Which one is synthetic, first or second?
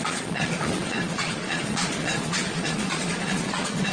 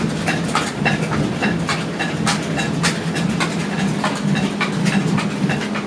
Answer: first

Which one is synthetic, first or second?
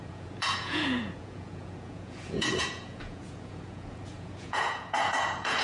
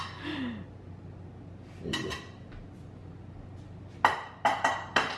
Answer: first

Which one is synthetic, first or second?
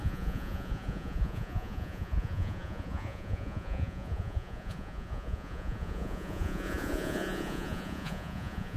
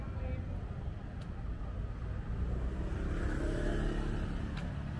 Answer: first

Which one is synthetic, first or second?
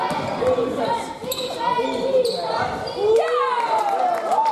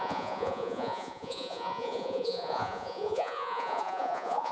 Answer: second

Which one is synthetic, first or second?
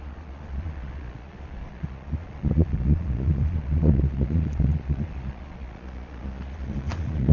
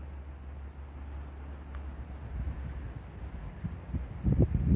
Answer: first